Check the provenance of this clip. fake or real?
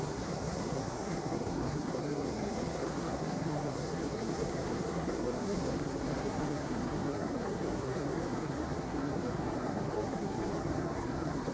fake